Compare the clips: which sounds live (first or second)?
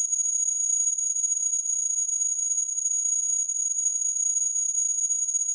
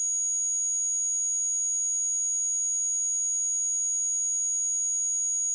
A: second